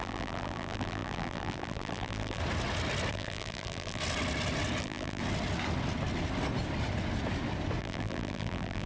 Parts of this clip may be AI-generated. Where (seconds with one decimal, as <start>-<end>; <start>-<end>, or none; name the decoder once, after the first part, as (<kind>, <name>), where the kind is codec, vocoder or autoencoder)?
0.0-2.4 (vocoder, BigVGAN v2); 3.1-4.0; 4.8-5.2; 7.8-8.9